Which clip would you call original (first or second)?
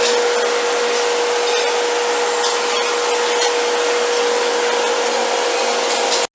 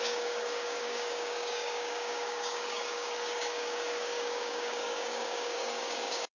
first